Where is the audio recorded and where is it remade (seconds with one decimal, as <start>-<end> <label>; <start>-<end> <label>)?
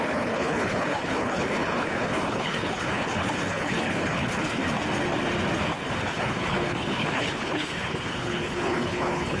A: 0.0-4.6 remade; 4.6-6.0 recorded; 6.0-9.4 remade